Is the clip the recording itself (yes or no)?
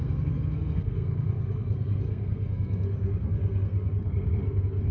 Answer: no